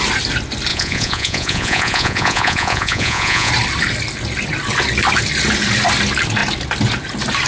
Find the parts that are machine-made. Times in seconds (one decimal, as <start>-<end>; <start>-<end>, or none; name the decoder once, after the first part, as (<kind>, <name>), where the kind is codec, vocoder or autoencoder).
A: 0.7-3.5 (vocoder, Vocos)